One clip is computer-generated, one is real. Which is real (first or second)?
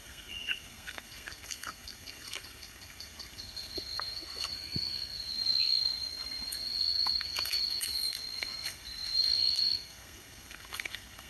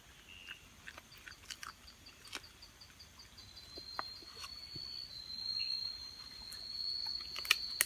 second